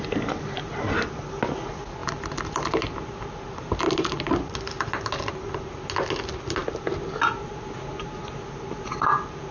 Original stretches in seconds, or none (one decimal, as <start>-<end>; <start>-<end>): 0.0-9.5